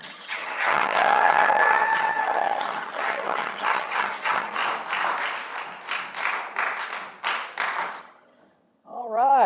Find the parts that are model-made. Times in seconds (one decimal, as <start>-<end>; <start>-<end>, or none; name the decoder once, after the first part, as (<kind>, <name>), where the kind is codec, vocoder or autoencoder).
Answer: 0.0-4.6 (vocoder, HiFi-GAN); 8.0-9.5